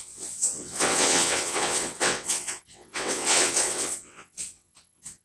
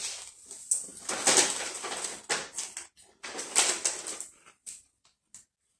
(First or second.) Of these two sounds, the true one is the second